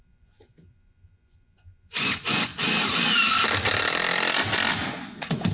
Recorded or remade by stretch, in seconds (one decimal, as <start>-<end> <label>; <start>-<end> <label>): 0.0-2.5 remade; 2.5-4.9 recorded; 4.9-5.5 remade

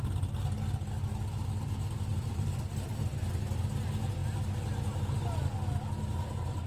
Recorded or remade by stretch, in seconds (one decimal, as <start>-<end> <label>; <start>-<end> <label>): 0.0-2.1 recorded; 2.1-3.3 remade; 3.3-6.7 recorded

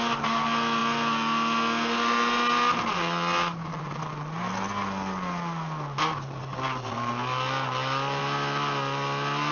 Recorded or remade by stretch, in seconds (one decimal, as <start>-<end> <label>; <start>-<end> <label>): 0.0-9.5 recorded

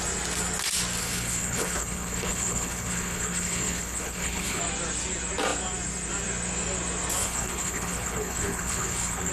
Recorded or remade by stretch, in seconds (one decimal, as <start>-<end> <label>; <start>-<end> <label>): 0.0-1.0 recorded; 1.0-4.6 remade; 4.6-7.2 recorded; 7.2-9.3 remade

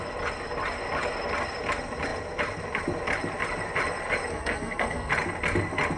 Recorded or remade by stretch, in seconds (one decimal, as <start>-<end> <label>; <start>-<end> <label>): 0.0-4.3 recorded; 4.3-5.1 remade; 5.1-6.0 recorded

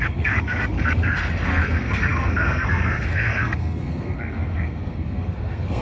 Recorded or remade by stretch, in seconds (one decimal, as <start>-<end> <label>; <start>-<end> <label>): 0.0-5.8 remade

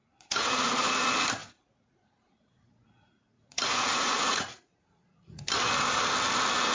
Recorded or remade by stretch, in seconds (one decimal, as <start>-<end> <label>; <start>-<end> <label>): 0.0-0.9 remade; 0.9-1.4 recorded; 1.4-5.4 remade; 5.4-6.7 recorded

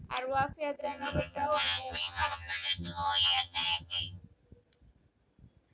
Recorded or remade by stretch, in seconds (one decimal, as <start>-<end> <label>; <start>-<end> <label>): 0.0-0.8 recorded; 0.8-4.2 remade; 4.2-5.7 recorded